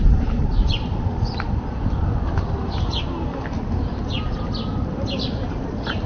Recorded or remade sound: recorded